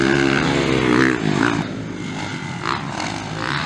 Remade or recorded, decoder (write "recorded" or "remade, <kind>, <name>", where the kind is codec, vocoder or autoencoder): recorded